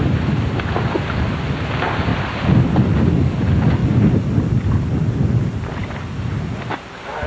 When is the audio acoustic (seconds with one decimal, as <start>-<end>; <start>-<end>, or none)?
0.0-7.3